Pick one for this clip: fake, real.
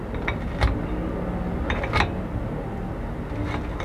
real